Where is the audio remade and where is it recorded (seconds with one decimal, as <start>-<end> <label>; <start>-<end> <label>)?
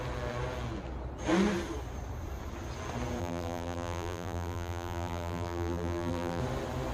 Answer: 0.0-3.2 recorded; 3.2-6.4 remade; 6.4-6.9 recorded